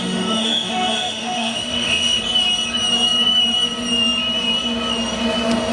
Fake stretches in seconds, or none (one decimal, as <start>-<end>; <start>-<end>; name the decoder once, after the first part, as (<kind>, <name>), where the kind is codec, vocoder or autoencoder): 0.0-2.2 (autoencoder, DAC-VAE)